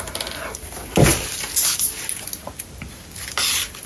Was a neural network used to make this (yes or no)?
no